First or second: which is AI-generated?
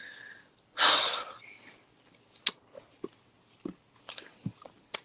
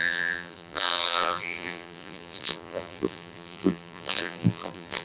second